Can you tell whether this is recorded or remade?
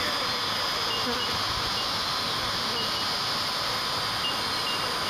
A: recorded